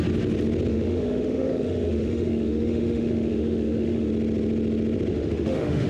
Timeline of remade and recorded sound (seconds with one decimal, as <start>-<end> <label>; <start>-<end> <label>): 0.0-0.7 recorded; 0.7-4.1 remade; 4.1-5.1 recorded; 5.1-5.9 remade